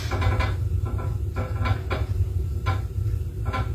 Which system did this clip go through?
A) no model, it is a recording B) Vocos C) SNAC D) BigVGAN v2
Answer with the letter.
A